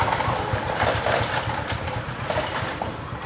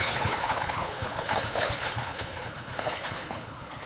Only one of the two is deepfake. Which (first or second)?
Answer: second